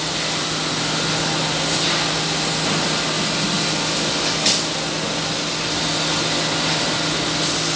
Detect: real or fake real